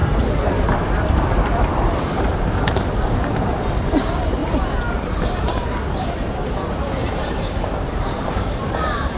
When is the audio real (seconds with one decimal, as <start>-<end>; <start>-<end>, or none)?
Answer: 4.4-5.0